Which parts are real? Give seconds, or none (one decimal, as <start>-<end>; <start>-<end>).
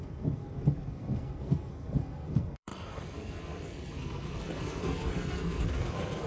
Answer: none